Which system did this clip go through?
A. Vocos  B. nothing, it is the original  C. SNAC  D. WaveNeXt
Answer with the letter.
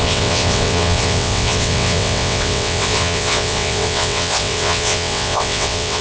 D